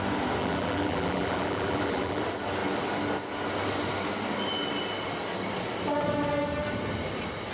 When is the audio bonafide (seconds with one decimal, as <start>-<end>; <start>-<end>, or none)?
0.0-0.4; 2.2-7.5